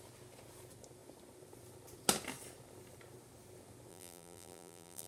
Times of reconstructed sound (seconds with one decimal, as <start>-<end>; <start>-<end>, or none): 3.9-5.1